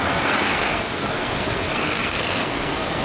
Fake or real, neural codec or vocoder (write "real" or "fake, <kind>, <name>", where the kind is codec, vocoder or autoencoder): fake, codec, SNAC